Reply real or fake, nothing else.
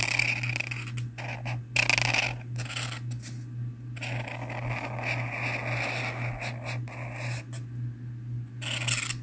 real